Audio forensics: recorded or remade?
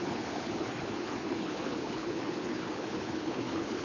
remade